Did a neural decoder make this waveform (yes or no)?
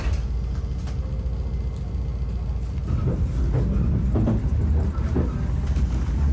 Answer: no